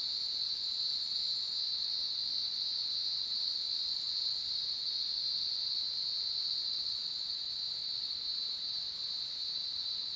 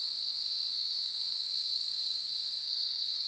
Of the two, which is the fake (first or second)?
second